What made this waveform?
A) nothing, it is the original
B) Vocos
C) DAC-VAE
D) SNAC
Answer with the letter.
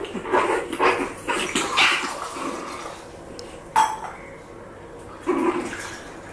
A